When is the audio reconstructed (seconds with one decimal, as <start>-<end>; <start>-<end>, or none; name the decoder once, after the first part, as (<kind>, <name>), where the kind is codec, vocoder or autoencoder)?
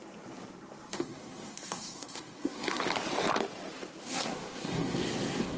0.9-2.8 (codec, SNAC); 4.0-5.6